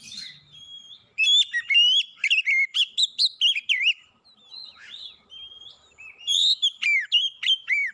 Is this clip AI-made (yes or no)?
no